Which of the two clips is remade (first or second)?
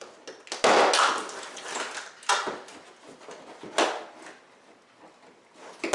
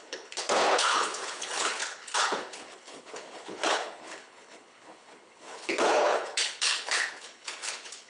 second